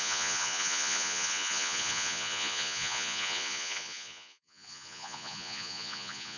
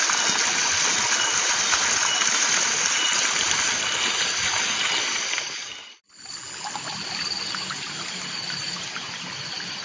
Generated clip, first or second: first